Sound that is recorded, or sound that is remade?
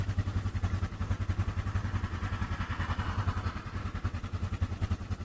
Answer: recorded